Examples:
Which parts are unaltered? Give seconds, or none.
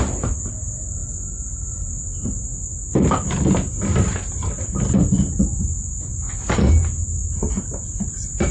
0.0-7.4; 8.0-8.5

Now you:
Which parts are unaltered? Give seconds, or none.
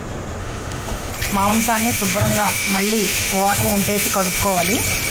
0.0-0.4; 1.1-1.5; 4.6-5.1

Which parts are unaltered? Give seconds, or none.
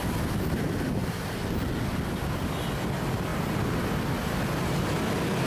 0.0-1.0; 1.8-5.5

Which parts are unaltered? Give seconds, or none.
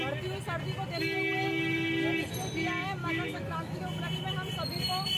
0.0-3.0; 3.8-5.2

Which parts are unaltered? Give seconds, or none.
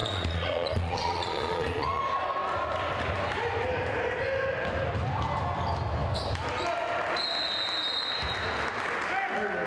2.0-9.7